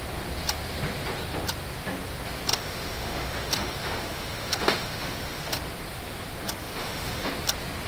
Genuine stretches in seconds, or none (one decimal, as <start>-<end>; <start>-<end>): 0.0-2.5; 5.6-6.6; 7.3-7.9